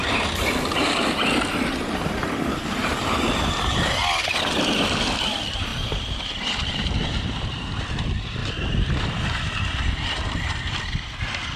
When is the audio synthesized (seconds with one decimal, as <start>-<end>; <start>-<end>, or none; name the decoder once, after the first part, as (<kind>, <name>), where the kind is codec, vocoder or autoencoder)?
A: 2.8-3.7 (vocoder, BigVGAN v2); 5.7-7.8; 8.4-8.9